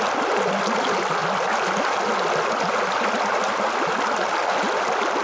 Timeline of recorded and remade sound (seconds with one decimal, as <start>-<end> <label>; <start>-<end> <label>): 0.0-5.2 recorded